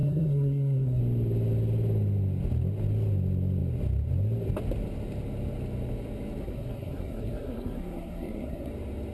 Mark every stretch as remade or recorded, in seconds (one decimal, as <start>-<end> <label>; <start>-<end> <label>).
0.0-1.0 remade; 1.0-6.4 recorded; 6.4-8.7 remade; 8.7-9.1 recorded